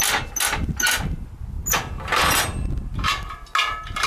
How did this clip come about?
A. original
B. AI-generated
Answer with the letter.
A